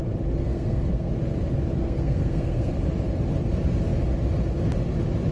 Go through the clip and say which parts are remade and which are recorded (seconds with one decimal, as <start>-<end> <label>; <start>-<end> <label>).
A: 0.0-0.4 recorded; 0.4-1.1 remade; 1.1-1.8 recorded; 1.8-2.7 remade; 2.7-5.3 recorded